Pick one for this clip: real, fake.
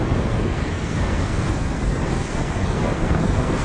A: fake